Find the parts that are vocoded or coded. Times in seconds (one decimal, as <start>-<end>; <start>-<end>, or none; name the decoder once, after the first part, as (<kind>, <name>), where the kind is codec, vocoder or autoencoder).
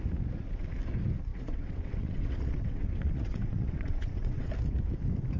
1.3-4.5 (vocoder, WaveNeXt)